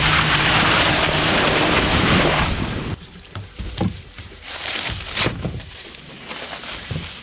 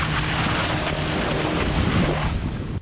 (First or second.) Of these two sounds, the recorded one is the second